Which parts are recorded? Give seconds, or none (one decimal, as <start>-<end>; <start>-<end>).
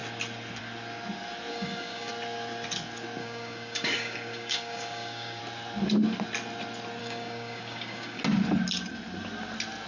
0.0-1.5; 2.1-3.2; 5.4-7.0; 8.2-9.9